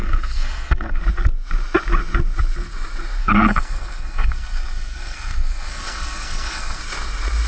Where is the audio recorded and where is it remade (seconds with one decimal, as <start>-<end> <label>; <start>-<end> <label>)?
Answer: 0.0-1.0 remade; 1.0-3.2 recorded; 3.2-6.8 remade; 6.8-7.5 recorded